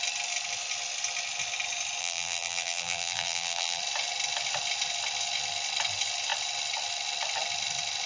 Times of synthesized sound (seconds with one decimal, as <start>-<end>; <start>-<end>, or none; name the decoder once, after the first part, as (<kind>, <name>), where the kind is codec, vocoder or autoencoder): 2.0-3.8 (vocoder, BigVGAN v2)